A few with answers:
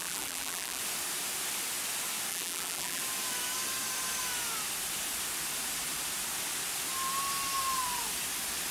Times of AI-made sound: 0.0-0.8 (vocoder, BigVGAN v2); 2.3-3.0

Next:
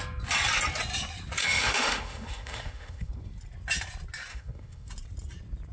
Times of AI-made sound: 1.4-3.1 (autoencoder, DAC-VAE); 4.3-4.9